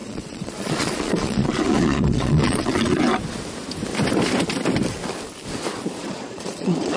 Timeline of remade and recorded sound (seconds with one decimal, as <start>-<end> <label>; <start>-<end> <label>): 0.0-3.0 remade; 3.0-6.0 recorded; 6.0-7.0 remade